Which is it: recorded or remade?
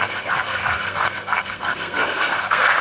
remade